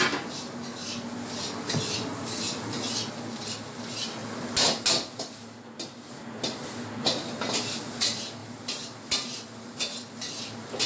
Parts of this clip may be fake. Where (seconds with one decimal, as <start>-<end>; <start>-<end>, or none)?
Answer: none

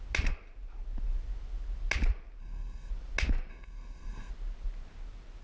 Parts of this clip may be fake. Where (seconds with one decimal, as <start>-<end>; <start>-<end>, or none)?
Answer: 2.4-2.9; 3.5-4.3

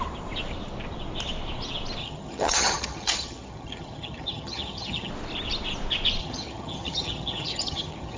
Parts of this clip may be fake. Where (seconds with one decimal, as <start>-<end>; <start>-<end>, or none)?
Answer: 2.0-5.1; 6.2-8.2